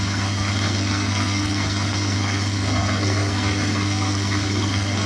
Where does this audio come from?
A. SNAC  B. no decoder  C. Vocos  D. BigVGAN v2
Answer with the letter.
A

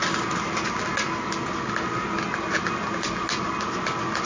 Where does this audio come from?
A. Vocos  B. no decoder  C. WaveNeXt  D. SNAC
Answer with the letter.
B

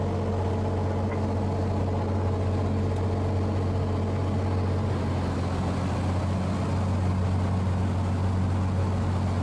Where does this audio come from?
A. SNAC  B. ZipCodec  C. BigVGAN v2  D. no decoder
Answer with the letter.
D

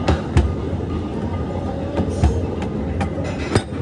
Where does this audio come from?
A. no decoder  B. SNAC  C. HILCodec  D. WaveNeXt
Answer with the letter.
A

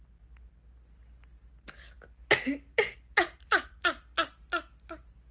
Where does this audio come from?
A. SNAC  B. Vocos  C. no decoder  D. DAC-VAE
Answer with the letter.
C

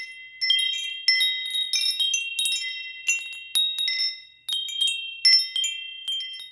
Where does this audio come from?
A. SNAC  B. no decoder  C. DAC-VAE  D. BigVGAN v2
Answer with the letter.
B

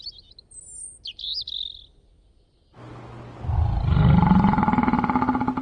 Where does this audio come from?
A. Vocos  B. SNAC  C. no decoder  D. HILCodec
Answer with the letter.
C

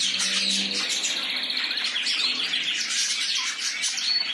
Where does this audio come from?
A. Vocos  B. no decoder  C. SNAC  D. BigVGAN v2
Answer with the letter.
B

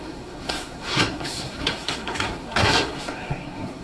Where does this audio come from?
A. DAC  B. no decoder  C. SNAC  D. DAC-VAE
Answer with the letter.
C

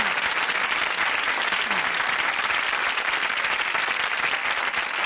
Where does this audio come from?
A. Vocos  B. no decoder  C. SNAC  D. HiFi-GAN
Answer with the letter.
B